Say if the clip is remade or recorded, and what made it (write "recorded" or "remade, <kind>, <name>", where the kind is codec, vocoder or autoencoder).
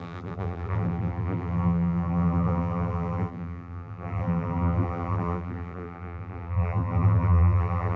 remade, vocoder, BigVGAN v2